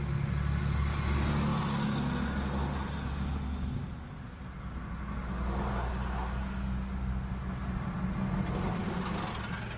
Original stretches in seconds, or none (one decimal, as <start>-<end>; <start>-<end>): 0.0-9.8